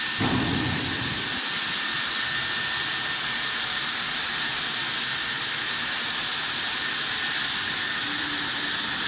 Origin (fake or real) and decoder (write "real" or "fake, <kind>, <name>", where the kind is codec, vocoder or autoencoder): real